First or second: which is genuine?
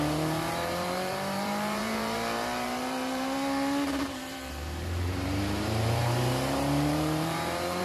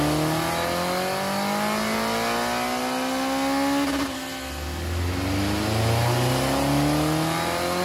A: second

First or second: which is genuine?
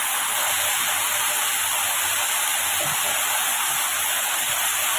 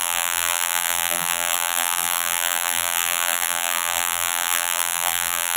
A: first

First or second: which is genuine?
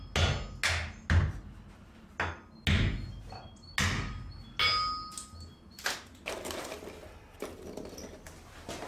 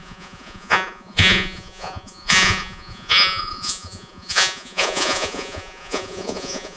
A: first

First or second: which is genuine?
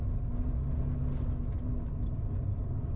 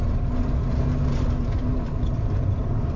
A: first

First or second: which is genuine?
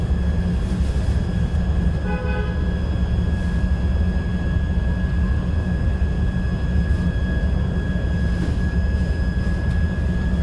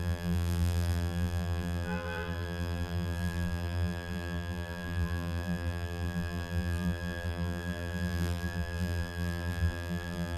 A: first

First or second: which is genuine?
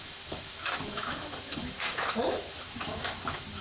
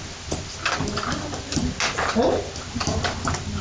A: second